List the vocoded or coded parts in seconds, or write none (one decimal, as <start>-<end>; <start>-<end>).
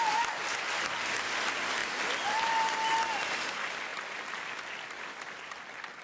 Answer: none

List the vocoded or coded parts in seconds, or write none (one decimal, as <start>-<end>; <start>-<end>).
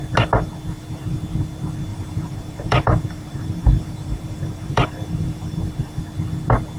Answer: 1.9-6.0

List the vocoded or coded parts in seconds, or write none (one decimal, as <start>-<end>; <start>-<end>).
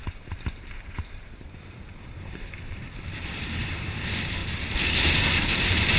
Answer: 0.0-4.4; 5.6-6.0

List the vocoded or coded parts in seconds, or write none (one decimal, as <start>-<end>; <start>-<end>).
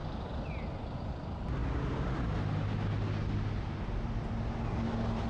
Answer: none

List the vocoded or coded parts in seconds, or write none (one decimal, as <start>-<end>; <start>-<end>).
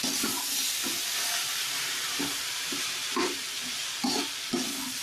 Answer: 1.4-3.8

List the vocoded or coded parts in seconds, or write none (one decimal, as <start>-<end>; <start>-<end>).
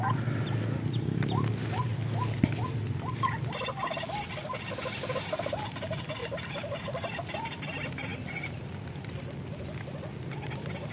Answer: 6.2-6.8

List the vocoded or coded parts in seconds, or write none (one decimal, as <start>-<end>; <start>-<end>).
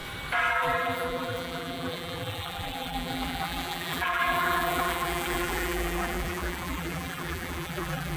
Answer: 0.5-8.2